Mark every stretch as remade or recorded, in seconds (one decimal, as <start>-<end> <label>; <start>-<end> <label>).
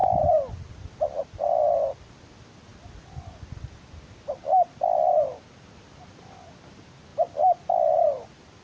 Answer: 0.0-8.6 recorded